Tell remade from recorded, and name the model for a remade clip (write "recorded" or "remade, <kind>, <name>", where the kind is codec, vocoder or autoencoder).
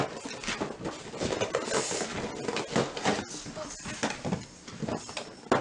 recorded